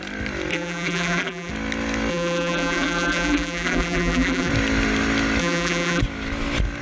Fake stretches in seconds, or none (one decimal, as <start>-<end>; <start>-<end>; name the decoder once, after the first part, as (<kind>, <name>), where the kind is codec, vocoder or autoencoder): 0.5-1.5 (vocoder, BigVGAN v2); 2.1-4.5; 5.4-6.0